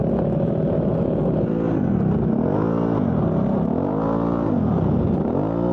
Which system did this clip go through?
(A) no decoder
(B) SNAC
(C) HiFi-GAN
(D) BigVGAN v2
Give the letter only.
A